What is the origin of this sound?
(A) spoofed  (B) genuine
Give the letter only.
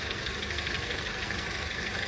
A